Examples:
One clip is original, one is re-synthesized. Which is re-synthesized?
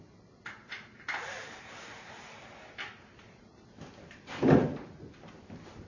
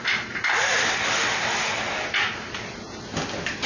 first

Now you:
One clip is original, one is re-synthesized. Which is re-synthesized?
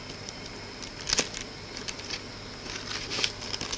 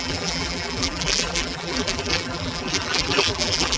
second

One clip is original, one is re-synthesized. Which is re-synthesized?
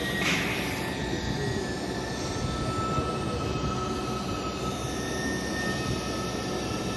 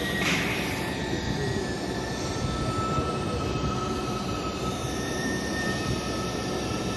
second